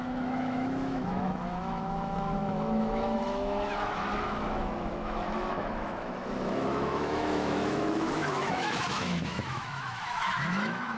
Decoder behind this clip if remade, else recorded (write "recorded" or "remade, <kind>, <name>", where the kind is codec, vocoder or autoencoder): remade, autoencoder, DAC-VAE